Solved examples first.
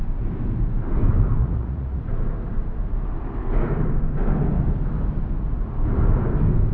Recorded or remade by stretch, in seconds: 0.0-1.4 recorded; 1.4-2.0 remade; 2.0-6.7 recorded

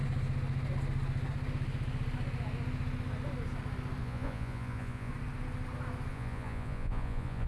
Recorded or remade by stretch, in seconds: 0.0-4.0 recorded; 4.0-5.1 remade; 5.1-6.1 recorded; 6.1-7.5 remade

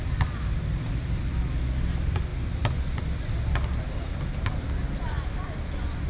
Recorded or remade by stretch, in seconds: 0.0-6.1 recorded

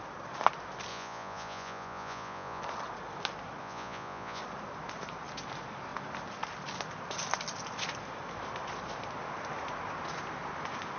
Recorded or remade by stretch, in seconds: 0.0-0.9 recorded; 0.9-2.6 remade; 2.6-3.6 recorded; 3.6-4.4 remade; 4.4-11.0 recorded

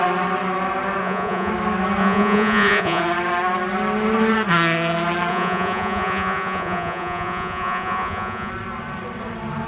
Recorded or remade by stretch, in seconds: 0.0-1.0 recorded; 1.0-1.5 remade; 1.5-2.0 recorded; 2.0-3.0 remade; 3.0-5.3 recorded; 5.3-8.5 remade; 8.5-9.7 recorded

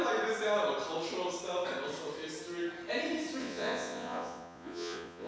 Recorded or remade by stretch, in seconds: 0.0-3.4 recorded; 3.4-5.3 remade

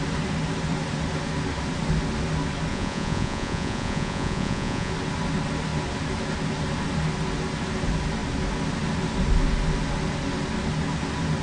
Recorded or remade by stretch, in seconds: 0.0-2.7 recorded; 2.7-4.9 remade; 4.9-11.4 recorded

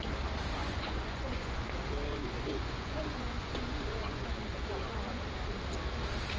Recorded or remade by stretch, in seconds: 0.0-0.6 recorded; 0.6-1.7 remade; 1.7-2.1 recorded; 2.1-5.2 remade; 5.2-6.4 recorded